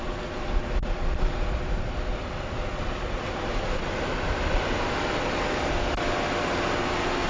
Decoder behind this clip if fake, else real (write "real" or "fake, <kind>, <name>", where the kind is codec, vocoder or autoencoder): real